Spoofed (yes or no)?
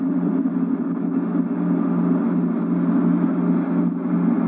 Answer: no